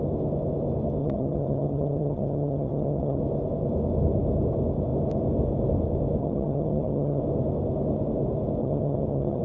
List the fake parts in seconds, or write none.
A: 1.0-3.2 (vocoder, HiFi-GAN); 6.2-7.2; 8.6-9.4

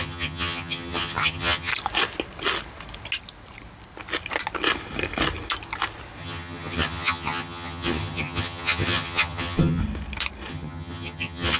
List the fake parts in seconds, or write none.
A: 0.0-1.7 (vocoder, HiFi-GAN); 6.2-9.8; 10.5-11.6

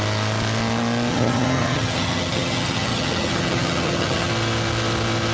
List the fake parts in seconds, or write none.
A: 1.1-4.3 (vocoder, HiFi-GAN)

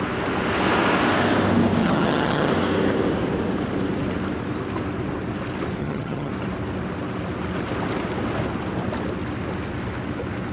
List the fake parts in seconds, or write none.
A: 1.8-2.5 (vocoder, HiFi-GAN); 5.8-6.3

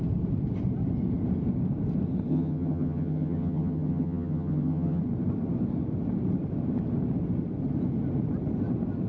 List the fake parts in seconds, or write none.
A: 2.3-5.0 (vocoder, HiFi-GAN)

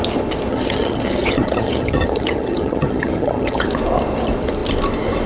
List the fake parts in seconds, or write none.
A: 0.5-3.7 (vocoder, HiFi-GAN)

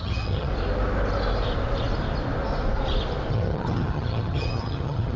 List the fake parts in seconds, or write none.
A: 0.0-0.5 (vocoder, HiFi-GAN); 3.3-5.2